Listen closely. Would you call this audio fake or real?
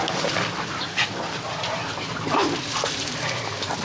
real